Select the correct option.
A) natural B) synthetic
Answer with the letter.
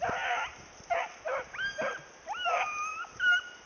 A